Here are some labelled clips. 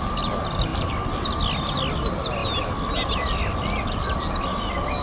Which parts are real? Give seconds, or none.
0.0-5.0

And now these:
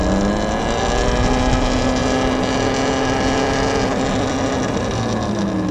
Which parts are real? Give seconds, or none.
0.0-5.7

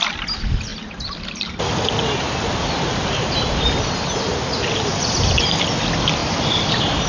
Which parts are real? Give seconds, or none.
0.0-7.1

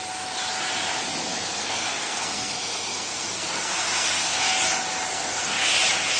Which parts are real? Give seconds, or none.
0.0-1.3; 4.4-5.1; 5.7-6.2

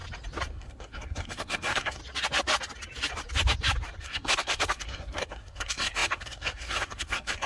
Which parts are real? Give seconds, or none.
0.0-0.5; 2.0-4.0

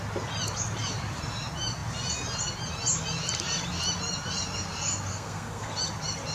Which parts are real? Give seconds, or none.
0.0-5.1; 5.7-6.3

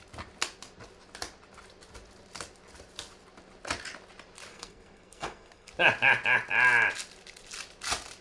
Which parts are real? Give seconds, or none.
0.0-4.5; 5.7-8.2

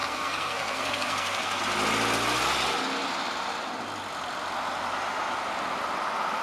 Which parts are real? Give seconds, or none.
1.6-6.4